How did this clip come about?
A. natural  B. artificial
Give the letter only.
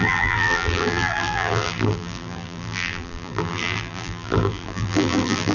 B